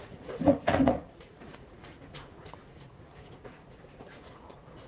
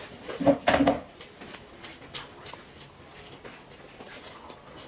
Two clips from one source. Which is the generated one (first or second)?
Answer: first